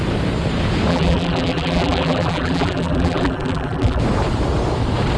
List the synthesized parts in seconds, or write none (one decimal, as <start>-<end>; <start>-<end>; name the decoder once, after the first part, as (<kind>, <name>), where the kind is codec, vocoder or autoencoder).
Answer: 0.9-4.0 (vocoder, BigVGAN v2)

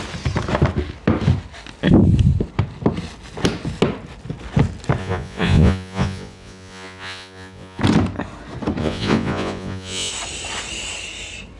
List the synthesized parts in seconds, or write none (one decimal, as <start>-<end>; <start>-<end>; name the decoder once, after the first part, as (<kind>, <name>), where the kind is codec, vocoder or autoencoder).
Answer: 5.0-7.8 (vocoder, Vocos); 8.8-10.1

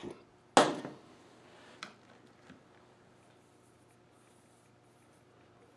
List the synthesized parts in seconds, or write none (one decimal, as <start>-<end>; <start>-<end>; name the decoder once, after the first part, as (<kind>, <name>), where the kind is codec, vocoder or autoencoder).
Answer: none

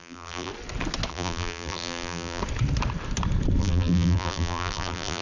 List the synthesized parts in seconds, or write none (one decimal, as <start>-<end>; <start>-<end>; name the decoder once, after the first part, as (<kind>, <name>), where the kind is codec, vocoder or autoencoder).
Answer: 0.0-0.5 (vocoder, BigVGAN v2); 1.1-2.4; 3.6-5.2

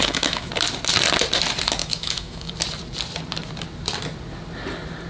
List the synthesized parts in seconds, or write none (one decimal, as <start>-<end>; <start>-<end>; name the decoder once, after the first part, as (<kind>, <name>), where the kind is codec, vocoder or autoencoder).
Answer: 0.0-0.5 (autoencoder, DAC-VAE); 1.8-2.5

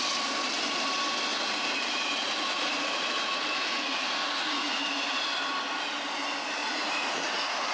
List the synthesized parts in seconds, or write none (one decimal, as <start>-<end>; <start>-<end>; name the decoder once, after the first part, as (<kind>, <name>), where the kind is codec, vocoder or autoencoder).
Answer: 1.3-5.2 (vocoder, Vocos); 6.6-7.7